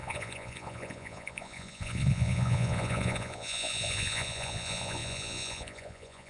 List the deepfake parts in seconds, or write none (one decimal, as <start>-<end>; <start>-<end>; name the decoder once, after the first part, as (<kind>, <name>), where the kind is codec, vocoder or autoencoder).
0.0-6.3 (vocoder, Vocos)

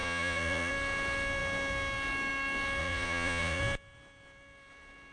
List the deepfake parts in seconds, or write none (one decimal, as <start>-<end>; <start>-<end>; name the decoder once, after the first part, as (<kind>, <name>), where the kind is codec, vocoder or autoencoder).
0.0-0.7 (vocoder, Vocos); 2.8-3.6

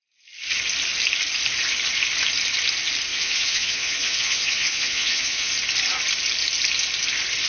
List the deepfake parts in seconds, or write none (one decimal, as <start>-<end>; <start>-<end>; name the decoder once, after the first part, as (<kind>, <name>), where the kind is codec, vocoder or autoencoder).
3.1-5.5 (vocoder, Vocos)

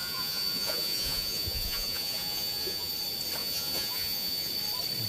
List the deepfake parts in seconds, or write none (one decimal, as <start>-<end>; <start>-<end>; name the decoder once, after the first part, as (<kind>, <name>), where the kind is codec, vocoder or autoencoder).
0.0-2.9 (vocoder, Vocos); 3.4-4.5

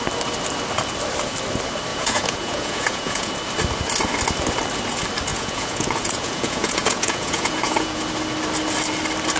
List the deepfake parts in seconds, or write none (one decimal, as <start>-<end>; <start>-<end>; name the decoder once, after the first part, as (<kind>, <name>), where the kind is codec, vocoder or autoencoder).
1.9-3.3 (vocoder, Vocos); 5.3-8.0